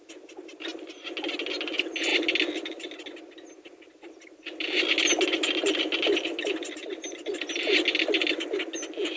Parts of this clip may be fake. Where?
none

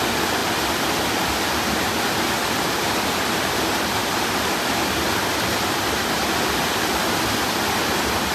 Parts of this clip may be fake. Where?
4.0-4.9 (vocoder, BigVGAN v2)

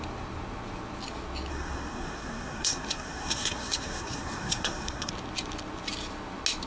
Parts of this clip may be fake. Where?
1.5-5.1 (codec, SNAC)

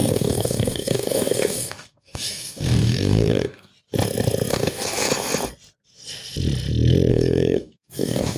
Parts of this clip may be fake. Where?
0.0-3.7 (codec, DAC); 4.5-5.1; 7.1-8.4

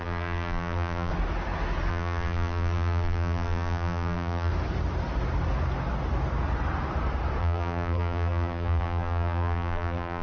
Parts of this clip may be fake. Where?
0.0-1.1 (vocoder, BigVGAN v2); 1.9-4.5; 7.4-10.2

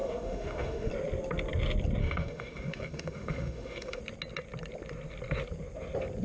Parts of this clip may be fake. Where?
0.0-0.9 (autoencoder, DAC-VAE); 2.0-4.0

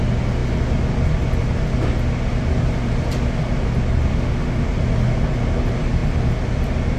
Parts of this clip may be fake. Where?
4.1-4.7 (autoencoder, DAC-VAE)

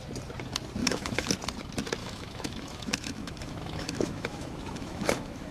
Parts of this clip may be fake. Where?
0.8-1.3 (autoencoder, DAC-VAE); 2.0-5.5